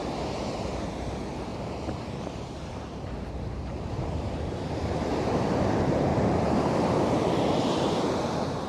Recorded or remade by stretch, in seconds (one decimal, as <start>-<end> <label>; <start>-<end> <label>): 0.0-1.5 remade; 1.5-2.1 recorded; 2.1-6.1 remade; 6.1-8.0 recorded; 8.0-8.7 remade